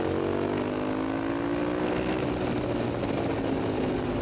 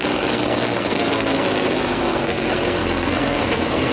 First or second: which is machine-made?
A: second